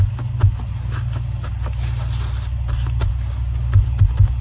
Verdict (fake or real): real